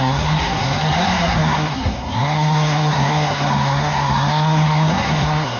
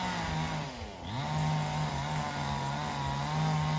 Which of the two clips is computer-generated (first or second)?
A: first